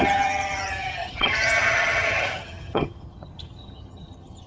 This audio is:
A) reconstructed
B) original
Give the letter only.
A